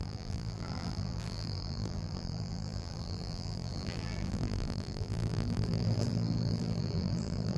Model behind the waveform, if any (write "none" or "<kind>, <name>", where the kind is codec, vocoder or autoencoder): vocoder, BigVGAN v2